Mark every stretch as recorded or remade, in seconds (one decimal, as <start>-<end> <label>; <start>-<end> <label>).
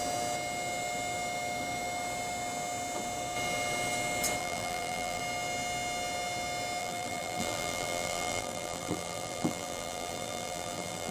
0.0-4.4 recorded; 4.4-5.2 remade; 5.2-6.8 recorded; 6.8-11.1 remade